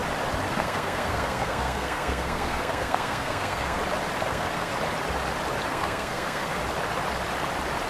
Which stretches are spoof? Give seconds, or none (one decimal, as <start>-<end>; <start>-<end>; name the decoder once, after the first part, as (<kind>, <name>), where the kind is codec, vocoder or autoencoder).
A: 0.5-3.8 (codec, SNAC); 4.3-4.7; 5.7-6.6